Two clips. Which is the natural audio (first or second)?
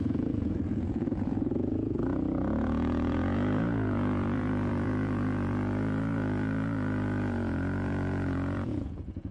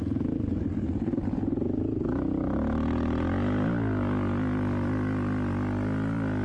second